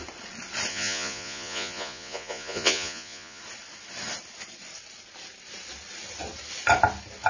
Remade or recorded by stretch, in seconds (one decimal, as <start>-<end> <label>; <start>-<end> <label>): 0.0-0.7 recorded; 0.7-3.4 remade; 3.4-7.3 recorded